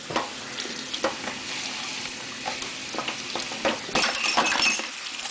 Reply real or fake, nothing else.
real